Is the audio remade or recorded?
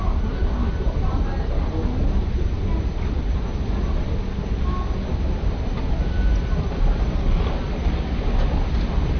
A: recorded